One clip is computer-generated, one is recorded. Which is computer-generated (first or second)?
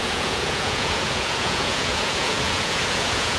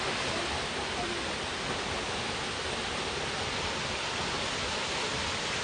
first